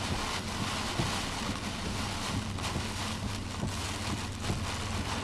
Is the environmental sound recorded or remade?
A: recorded